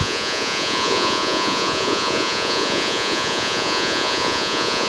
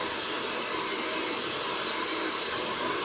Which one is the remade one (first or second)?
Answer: first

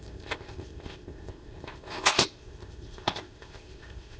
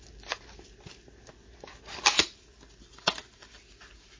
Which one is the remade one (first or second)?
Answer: first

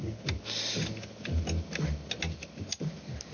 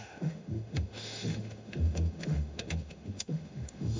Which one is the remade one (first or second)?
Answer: second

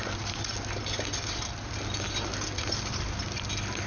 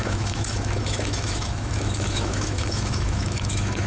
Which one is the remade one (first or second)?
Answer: second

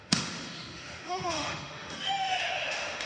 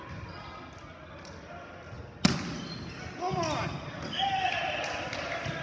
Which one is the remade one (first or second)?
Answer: first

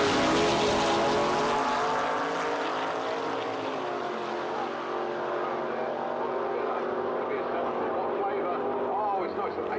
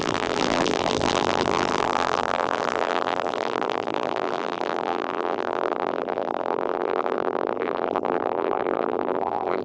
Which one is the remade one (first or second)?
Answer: second